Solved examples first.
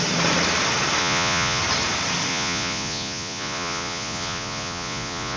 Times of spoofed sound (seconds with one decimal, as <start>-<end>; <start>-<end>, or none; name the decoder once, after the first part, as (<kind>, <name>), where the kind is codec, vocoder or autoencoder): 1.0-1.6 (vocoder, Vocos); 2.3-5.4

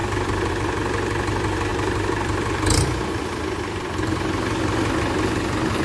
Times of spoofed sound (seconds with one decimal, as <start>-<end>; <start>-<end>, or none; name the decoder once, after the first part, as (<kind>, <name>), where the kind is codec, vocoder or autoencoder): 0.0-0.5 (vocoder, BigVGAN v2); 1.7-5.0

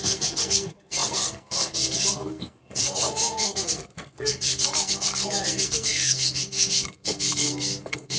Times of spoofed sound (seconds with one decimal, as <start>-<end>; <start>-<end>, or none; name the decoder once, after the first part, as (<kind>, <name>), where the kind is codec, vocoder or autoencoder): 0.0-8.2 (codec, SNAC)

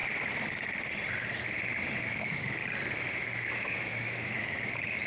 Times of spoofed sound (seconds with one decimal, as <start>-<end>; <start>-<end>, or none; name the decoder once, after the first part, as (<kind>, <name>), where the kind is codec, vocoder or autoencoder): 2.0-2.6 (autoencoder, DAC-VAE); 3.2-5.1

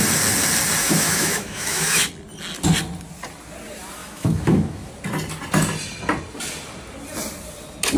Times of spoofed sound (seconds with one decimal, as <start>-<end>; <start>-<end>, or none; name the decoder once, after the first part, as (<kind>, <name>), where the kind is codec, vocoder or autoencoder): 0.8-2.1 (autoencoder, DAC-VAE); 4.0-4.9

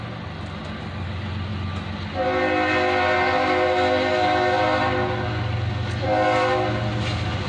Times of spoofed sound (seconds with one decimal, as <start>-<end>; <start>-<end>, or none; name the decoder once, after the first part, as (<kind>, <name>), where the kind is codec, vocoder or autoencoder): none

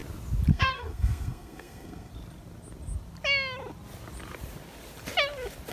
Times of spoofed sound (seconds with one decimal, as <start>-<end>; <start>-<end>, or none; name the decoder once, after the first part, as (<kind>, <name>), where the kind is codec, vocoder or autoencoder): 0.5-2.1 (codec, SNAC)

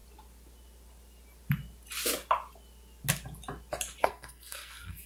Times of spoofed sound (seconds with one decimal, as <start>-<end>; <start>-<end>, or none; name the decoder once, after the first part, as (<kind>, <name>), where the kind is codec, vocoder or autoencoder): 4.0-5.1 (codec, SNAC)